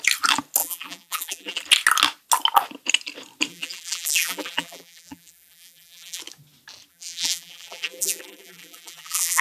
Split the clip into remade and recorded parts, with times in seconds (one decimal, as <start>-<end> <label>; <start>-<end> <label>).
0.0-0.6 recorded; 0.6-1.6 remade; 1.6-3.5 recorded; 3.5-6.2 remade; 6.2-6.9 recorded; 6.9-9.4 remade